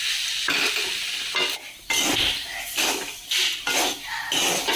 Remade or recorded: recorded